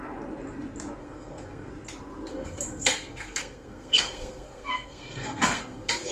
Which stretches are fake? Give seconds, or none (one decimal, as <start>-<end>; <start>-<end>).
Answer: 1.0-1.7; 2.3-6.1